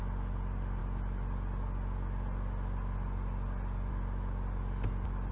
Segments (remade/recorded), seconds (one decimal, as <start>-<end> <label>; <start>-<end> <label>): 0.0-5.3 recorded

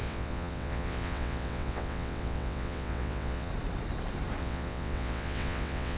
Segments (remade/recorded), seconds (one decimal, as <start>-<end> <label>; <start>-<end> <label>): 0.0-3.5 remade; 3.5-4.4 recorded; 4.4-6.0 remade

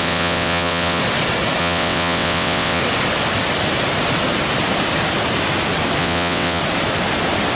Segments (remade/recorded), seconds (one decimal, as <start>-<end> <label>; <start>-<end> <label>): 0.0-1.0 remade; 1.0-1.6 recorded; 1.6-2.8 remade; 2.8-6.0 recorded; 6.0-6.6 remade; 6.6-7.6 recorded

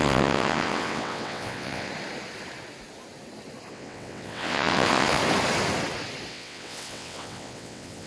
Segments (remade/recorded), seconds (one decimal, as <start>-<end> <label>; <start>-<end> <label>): 0.0-1.9 remade; 1.9-3.7 recorded; 3.7-5.2 remade; 5.2-6.3 recorded; 6.3-8.1 remade

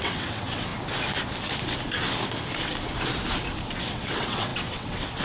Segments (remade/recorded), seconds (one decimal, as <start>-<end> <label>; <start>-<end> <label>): 0.0-0.7 remade; 0.7-3.8 recorded; 3.8-5.2 remade

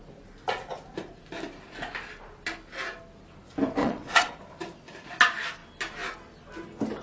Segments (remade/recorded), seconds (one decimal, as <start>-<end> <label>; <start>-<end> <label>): 0.0-3.8 recorded; 3.8-4.4 remade; 4.4-7.0 recorded